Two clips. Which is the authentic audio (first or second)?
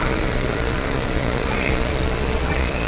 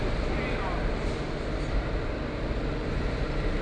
second